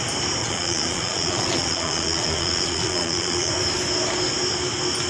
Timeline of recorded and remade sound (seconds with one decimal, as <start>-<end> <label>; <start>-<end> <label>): 0.0-0.4 recorded; 0.4-3.5 remade; 3.5-5.1 recorded